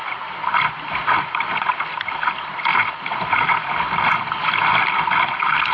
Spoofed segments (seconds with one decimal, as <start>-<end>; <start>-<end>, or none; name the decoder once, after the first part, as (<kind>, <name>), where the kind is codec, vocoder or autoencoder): none